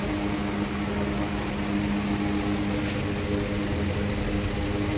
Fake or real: real